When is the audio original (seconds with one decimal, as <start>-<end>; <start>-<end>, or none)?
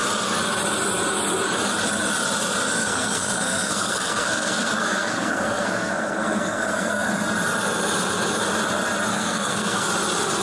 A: 0.0-2.8; 7.1-9.1; 9.9-10.4